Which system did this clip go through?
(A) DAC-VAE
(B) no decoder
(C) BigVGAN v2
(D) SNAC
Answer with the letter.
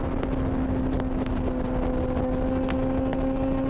B